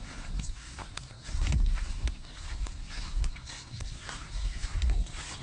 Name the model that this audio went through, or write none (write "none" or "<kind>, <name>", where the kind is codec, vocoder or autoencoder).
codec, SNAC